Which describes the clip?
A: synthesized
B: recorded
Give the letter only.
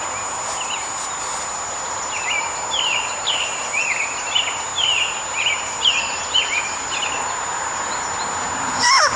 B